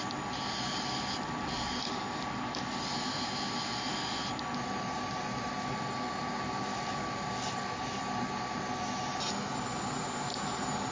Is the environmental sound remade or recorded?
recorded